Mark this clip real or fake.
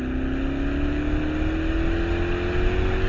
real